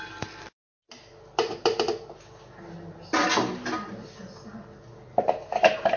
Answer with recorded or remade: recorded